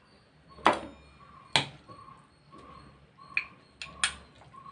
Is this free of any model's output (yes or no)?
yes